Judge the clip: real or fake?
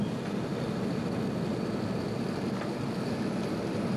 real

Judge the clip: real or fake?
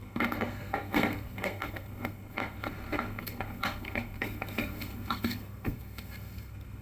fake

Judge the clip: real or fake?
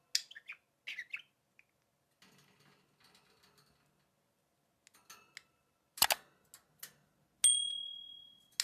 real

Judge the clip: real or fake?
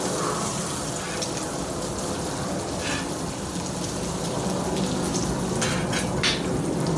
real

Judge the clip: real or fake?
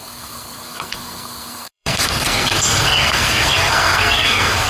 fake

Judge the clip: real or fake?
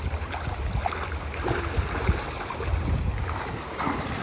real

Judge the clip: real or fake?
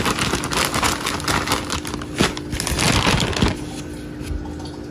real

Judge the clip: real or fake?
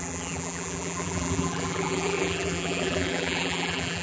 fake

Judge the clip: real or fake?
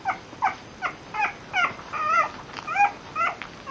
real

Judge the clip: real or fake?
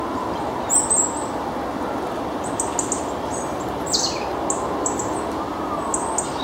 real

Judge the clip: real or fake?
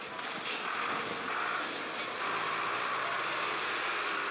real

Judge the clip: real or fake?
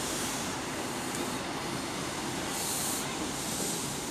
real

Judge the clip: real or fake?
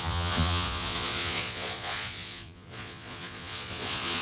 fake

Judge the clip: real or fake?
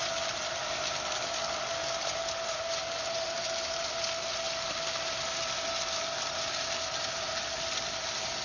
real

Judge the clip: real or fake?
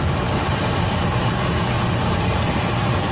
real